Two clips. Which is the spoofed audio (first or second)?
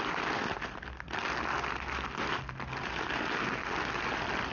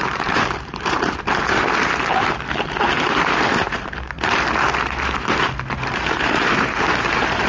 second